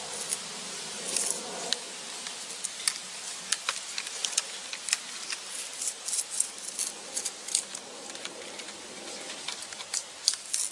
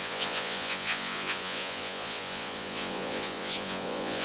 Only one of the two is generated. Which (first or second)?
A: second